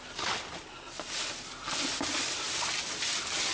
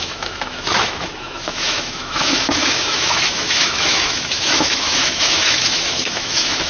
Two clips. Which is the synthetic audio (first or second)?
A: second